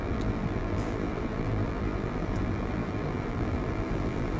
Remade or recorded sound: remade